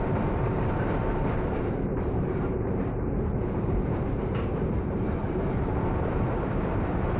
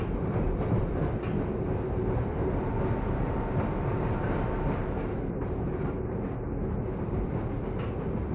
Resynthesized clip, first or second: first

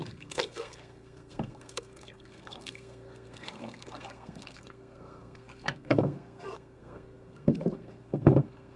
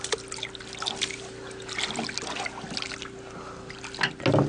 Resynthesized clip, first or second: first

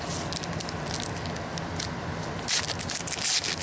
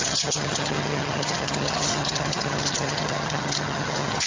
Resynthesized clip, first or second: second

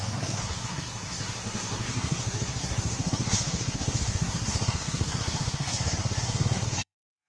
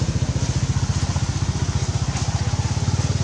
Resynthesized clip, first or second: first